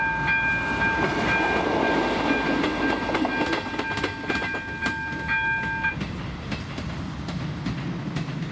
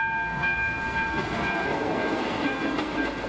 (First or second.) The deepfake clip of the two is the second